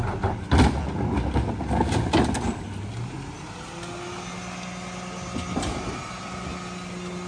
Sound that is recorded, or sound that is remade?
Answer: recorded